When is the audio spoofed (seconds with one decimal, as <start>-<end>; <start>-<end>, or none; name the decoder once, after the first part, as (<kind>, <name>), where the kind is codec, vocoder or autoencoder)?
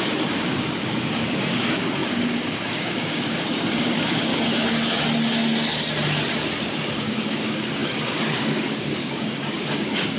0.0-4.3 (codec, DAC); 7.0-10.2